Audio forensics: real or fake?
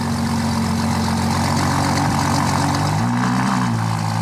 real